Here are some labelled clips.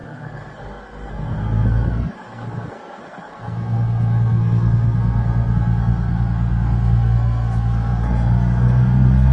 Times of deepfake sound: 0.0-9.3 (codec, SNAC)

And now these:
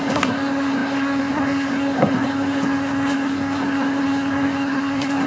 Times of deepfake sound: 0.0-5.3 (codec, SNAC)